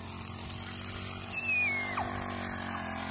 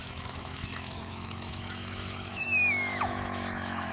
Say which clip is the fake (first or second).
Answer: second